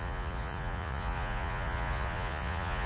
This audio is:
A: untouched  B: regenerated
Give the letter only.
B